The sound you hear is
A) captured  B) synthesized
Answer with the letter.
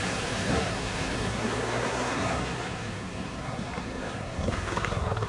B